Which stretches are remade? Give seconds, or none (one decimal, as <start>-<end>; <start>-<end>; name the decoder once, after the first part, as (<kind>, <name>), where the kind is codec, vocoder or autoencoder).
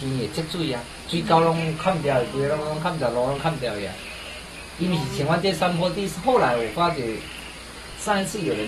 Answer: none